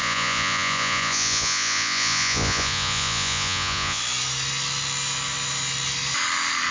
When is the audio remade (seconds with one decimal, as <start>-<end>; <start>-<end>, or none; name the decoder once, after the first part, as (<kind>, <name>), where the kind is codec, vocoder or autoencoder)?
0.0-4.0 (vocoder, Vocos)

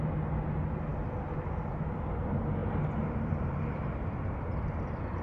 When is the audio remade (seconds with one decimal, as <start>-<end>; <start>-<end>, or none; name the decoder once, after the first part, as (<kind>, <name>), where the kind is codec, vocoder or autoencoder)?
2.6-4.8 (vocoder, BigVGAN v2)

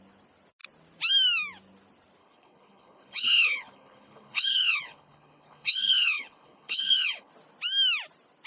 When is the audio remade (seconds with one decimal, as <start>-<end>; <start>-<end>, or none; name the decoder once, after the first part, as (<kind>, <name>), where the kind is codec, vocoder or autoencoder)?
2.2-7.3 (codec, HILCodec)

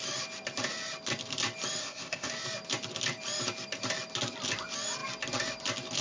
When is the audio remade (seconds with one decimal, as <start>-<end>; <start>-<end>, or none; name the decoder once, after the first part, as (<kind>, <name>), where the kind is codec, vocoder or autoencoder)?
1.8-2.3 (codec, ZipCodec)